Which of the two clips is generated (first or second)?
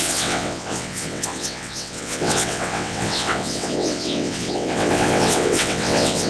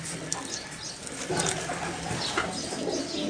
first